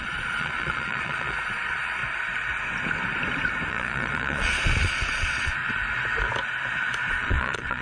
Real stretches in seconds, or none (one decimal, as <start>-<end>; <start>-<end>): 2.0-3.7; 5.6-7.1